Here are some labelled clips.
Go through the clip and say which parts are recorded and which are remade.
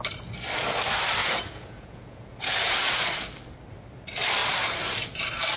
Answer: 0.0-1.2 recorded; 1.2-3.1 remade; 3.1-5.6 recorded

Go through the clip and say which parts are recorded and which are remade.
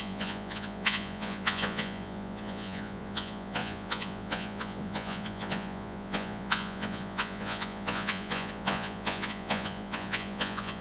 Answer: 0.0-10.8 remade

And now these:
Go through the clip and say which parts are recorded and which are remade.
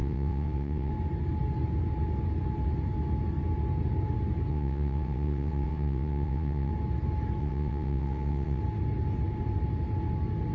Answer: 0.0-0.9 remade; 0.9-4.5 recorded; 4.5-6.7 remade; 6.7-7.4 recorded; 7.4-8.6 remade; 8.6-10.5 recorded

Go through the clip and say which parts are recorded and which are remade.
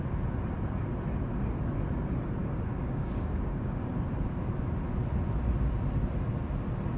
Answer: 0.0-2.4 recorded; 2.4-3.9 remade; 3.9-7.0 recorded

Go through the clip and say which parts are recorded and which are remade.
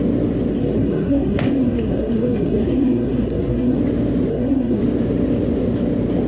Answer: 0.0-0.5 recorded; 0.5-3.8 remade; 3.8-4.3 recorded; 4.3-4.8 remade; 4.8-6.3 recorded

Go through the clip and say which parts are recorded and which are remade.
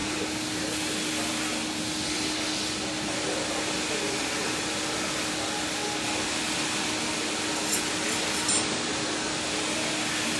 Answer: 0.0-10.4 recorded